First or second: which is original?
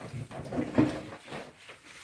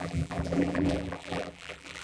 first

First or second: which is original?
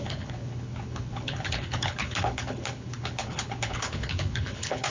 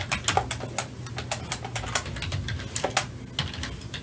second